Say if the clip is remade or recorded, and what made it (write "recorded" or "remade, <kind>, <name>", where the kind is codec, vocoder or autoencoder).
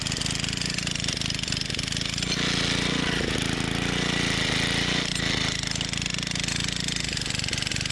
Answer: recorded